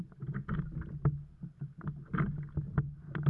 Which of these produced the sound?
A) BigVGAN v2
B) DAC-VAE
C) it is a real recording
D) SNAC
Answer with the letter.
C